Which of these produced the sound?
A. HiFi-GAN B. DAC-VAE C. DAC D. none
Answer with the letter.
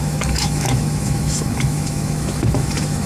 B